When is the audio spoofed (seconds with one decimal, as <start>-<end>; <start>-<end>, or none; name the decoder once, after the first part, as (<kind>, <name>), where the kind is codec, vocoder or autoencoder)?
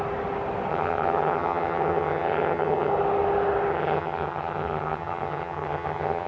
0.7-2.9 (vocoder, HiFi-GAN); 3.7-6.3